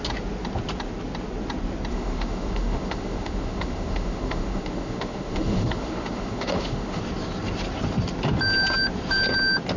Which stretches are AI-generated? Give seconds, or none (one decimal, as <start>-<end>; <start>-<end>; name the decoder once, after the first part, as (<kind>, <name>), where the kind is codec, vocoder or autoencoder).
1.9-7.0 (autoencoder, DAC-VAE)